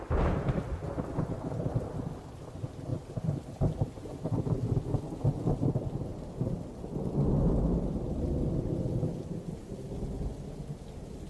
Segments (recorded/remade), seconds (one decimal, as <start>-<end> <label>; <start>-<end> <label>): 0.0-11.3 recorded